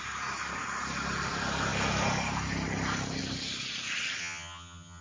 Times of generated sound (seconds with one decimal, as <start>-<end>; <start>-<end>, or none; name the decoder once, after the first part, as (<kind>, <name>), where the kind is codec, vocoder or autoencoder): 4.2-5.0 (vocoder, HiFi-GAN)